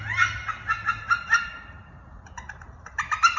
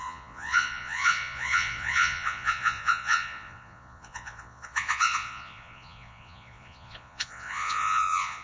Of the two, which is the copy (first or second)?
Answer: second